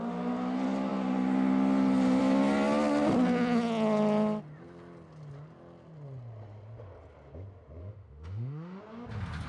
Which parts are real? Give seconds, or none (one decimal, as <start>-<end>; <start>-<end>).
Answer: 0.0-7.8; 8.8-9.5